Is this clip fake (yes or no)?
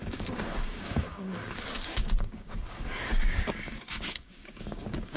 yes